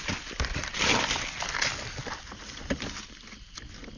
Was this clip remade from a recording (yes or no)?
no